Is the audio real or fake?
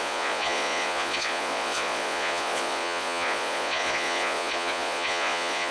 fake